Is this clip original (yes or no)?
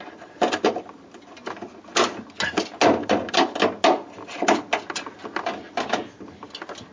yes